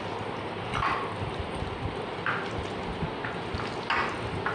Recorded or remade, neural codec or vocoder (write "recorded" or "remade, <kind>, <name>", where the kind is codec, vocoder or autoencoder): recorded